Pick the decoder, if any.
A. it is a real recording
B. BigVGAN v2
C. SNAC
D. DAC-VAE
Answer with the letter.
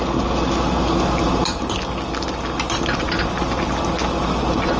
A